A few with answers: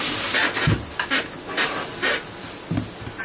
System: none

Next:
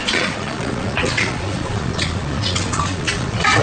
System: vocoder, Vocos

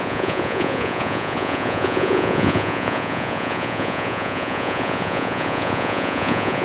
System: vocoder, Vocos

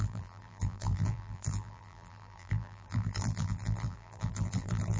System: vocoder, BigVGAN v2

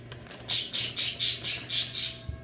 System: none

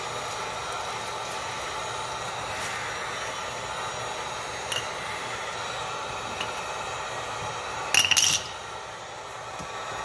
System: none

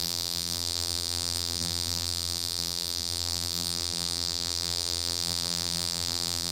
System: vocoder, BigVGAN v2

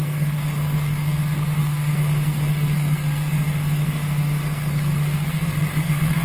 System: codec, SNAC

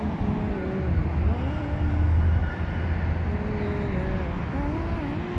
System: none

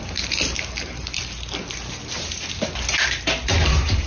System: none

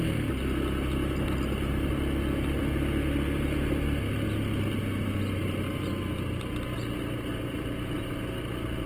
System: none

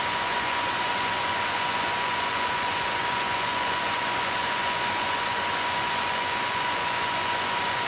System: vocoder, Vocos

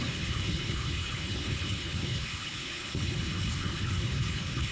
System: codec, HILCodec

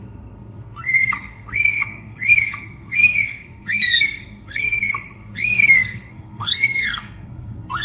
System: codec, SNAC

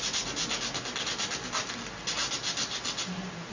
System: none